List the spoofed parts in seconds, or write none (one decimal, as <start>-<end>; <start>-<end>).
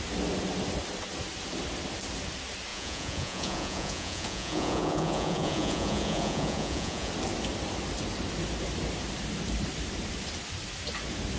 2.7-7.1